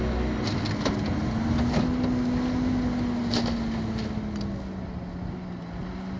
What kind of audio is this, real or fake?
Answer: real